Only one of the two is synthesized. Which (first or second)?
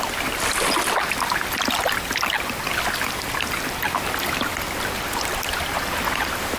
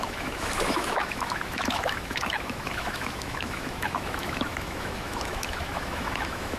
second